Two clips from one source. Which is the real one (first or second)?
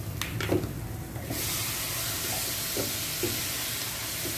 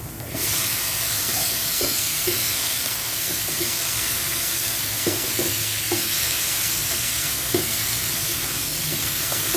first